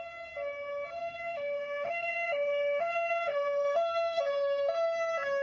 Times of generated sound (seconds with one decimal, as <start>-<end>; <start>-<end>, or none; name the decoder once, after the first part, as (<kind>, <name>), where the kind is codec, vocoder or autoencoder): 1.0-4.2 (autoencoder, DAC-VAE)